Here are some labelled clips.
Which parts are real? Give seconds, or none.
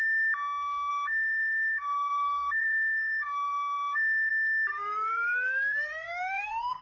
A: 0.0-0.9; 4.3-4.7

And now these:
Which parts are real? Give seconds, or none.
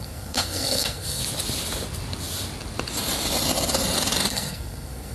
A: 1.2-4.3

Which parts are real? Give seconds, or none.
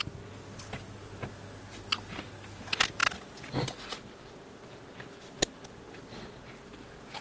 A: 0.0-7.2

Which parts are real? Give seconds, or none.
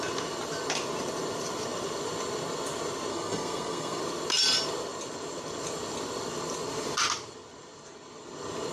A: 0.0-3.1; 4.0-8.7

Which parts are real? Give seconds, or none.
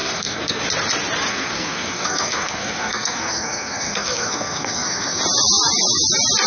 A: 0.6-1.3; 5.2-6.5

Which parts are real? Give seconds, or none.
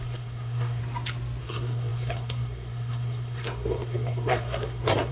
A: 0.8-1.4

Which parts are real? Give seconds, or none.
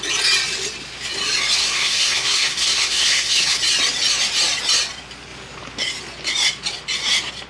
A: 0.0-1.6; 3.6-7.5